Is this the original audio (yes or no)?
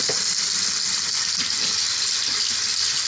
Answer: yes